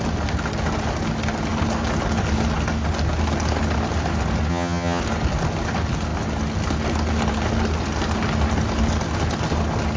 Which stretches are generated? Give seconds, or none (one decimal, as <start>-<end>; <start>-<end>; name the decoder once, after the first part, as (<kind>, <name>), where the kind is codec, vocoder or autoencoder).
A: 4.5-5.0 (vocoder, HiFi-GAN)